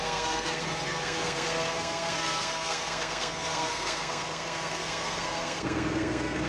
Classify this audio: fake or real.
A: fake